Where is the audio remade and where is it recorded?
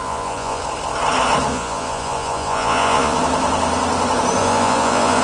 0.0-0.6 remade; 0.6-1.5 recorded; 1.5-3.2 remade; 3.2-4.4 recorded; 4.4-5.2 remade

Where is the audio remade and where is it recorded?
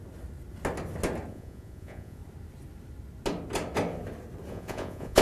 0.0-1.3 recorded; 1.3-2.2 remade; 2.2-4.5 recorded; 4.5-5.2 remade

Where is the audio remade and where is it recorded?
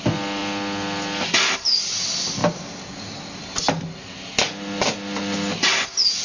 0.0-6.2 recorded